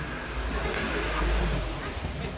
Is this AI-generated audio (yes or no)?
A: no